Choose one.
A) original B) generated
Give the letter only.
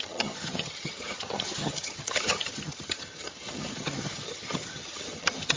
B